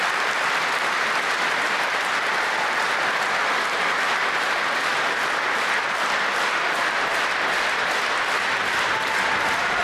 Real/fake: real